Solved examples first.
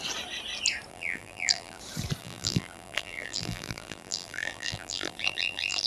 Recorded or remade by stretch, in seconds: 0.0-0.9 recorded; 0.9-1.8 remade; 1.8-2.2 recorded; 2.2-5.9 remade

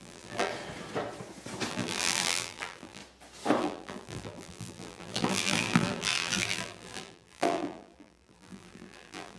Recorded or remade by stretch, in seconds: 0.0-0.5 remade; 0.5-1.7 recorded; 1.7-3.0 remade; 3.0-3.6 recorded; 3.6-9.4 remade

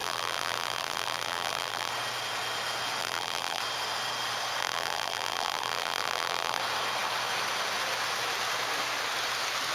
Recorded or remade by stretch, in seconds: 0.0-1.9 remade; 1.9-3.0 recorded; 3.0-3.6 remade; 3.6-4.6 recorded; 4.6-6.6 remade; 6.6-9.7 recorded

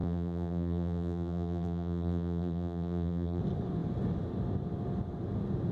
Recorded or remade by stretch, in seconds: 0.0-3.4 remade; 3.4-5.7 recorded

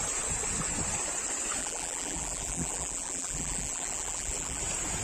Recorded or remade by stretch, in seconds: 0.0-1.6 recorded; 1.6-4.6 remade; 4.6-5.0 recorded

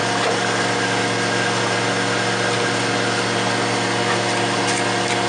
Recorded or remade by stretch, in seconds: 0.0-5.3 recorded

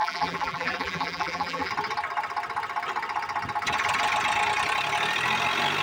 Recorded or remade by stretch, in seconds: 0.0-1.7 remade; 1.7-5.8 recorded